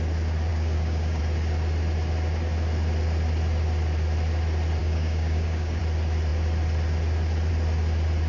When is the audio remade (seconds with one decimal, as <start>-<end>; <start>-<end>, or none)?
0.5-1.2; 4.8-5.8